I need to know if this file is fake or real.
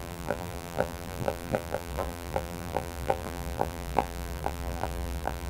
fake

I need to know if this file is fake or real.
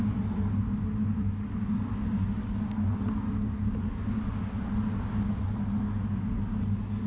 real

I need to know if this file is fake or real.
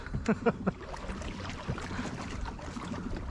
real